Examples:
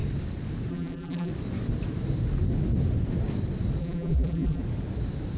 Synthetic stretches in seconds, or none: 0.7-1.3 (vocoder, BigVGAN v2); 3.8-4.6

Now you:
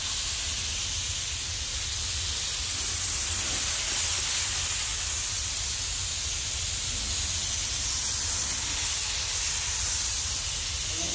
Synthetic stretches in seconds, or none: 0.7-2.8 (vocoder, BigVGAN v2); 4.9-8.0

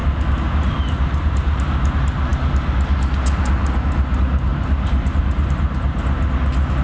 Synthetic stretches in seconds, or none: 0.0-1.9 (vocoder, BigVGAN v2); 4.5-5.2

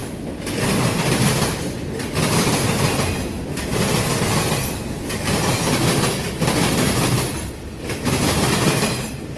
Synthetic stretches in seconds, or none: none

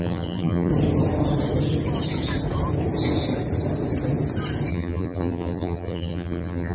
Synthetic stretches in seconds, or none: 0.0-0.7 (vocoder, BigVGAN v2); 4.7-6.7

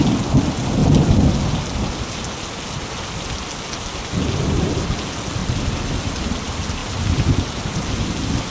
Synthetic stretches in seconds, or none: 6.8-8.1 (vocoder, BigVGAN v2)

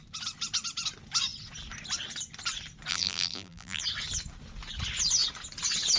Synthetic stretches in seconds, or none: 2.9-3.8 (vocoder, BigVGAN v2)